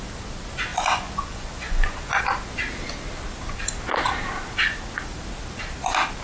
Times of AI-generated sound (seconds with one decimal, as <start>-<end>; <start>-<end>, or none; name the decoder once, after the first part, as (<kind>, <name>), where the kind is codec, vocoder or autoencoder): 0.7-2.2 (vocoder, Vocos)